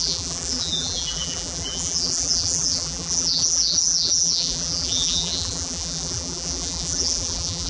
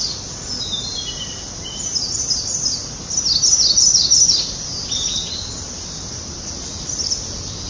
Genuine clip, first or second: second